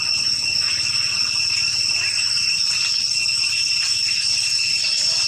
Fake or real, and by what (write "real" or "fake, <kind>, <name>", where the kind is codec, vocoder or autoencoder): real